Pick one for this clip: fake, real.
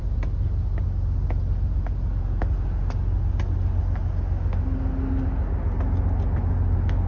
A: real